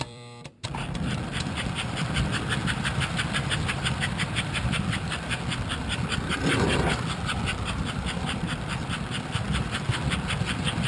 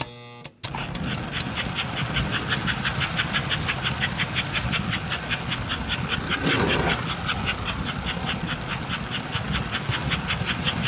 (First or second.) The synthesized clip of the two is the first